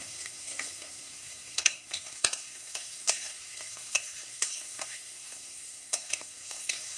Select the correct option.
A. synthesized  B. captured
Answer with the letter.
A